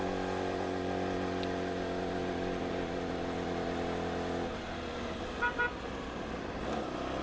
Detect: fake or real real